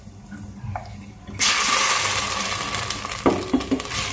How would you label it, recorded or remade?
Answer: recorded